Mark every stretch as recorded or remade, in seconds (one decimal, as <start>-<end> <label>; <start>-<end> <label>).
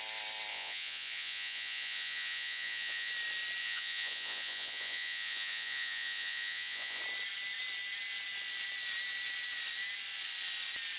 0.0-0.5 recorded; 0.5-3.1 remade; 3.1-3.6 recorded; 3.6-7.0 remade; 7.0-11.0 recorded